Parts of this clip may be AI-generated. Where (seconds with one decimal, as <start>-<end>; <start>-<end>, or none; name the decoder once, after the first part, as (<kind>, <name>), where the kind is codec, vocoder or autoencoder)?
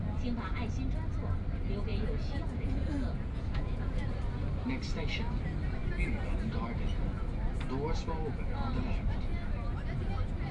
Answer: 1.9-4.1 (vocoder, Vocos)